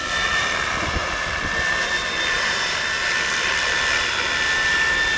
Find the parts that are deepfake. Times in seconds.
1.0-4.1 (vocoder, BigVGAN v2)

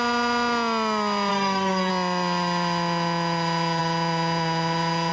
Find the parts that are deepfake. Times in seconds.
1.3-1.9 (codec, SNAC)